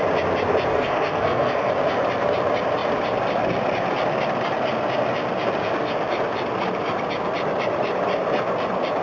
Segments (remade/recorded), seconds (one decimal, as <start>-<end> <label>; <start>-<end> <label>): 0.0-0.7 recorded; 0.7-1.7 remade; 1.7-9.0 recorded